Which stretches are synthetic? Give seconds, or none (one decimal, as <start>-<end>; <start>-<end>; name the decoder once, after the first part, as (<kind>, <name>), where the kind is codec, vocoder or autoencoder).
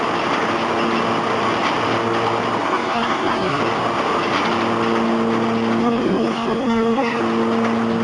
2.6-3.6 (codec, SNAC); 5.8-7.2